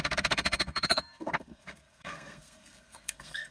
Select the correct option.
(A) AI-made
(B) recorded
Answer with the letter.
A